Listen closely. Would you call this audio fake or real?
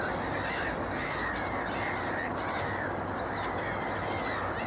real